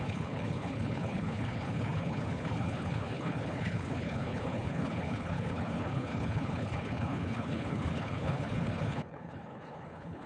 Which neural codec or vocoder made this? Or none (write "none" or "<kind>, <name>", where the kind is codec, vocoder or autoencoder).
codec, HILCodec